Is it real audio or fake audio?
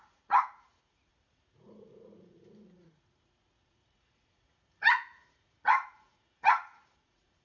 fake